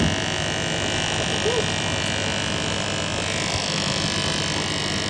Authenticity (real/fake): real